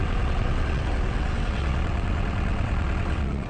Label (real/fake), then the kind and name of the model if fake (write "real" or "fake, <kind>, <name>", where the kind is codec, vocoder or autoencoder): fake, vocoder, WaveNeXt